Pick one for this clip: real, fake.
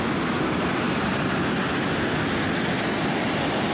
real